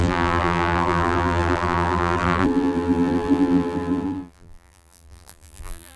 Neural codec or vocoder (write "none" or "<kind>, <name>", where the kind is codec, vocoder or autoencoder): vocoder, BigVGAN v2